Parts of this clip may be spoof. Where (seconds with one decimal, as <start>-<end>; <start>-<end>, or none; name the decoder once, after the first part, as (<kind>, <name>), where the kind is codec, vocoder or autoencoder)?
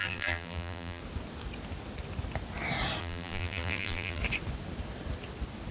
0.0-1.0 (vocoder, BigVGAN v2); 3.0-4.2